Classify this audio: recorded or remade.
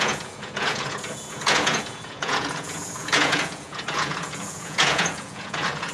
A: remade